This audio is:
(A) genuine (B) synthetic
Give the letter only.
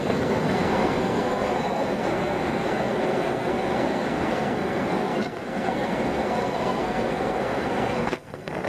B